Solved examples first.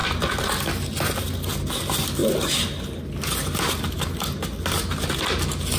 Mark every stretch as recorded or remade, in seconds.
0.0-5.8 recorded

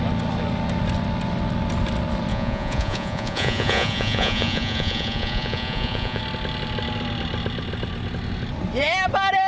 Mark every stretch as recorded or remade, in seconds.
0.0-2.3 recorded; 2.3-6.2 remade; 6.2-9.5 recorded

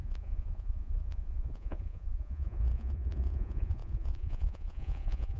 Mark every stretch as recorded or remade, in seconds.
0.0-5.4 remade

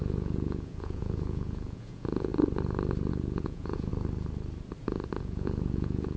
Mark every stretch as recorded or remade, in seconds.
0.0-2.3 remade; 2.3-3.1 recorded; 3.1-3.9 remade; 3.9-5.2 recorded; 5.2-6.2 remade